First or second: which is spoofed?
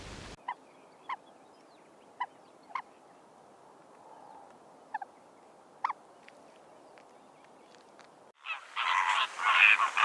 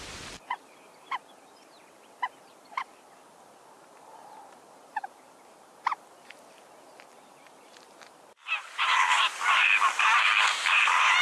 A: second